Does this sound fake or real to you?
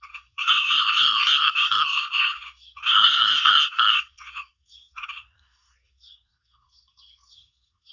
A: fake